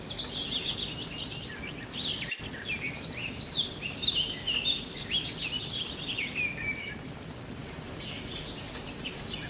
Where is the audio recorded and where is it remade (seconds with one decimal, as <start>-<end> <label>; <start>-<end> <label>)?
0.0-9.5 recorded